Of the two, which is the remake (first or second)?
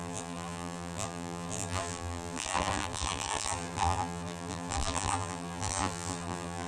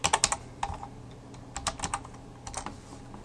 first